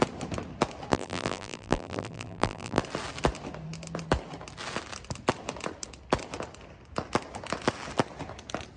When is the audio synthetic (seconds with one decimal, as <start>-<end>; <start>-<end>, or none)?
0.9-2.8